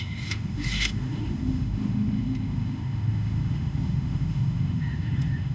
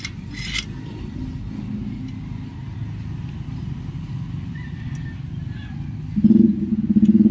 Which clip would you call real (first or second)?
second